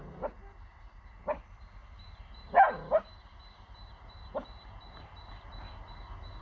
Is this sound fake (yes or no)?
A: no